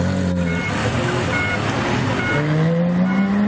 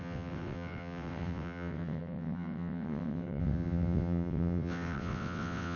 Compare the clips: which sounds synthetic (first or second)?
second